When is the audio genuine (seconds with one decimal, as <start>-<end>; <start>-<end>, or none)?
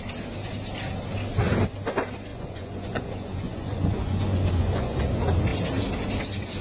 0.0-2.3; 5.0-6.6